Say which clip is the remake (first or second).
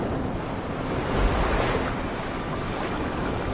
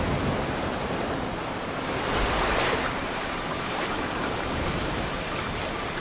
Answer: second